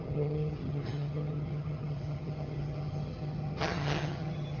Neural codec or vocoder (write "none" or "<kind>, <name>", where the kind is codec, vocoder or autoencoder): vocoder, HiFi-GAN